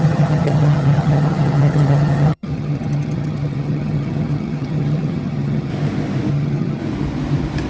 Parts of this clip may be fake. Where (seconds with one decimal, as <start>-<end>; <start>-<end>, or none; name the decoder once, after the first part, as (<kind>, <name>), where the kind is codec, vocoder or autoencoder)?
0.0-5.7 (vocoder, HiFi-GAN); 6.3-6.8